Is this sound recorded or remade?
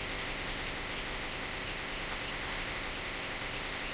remade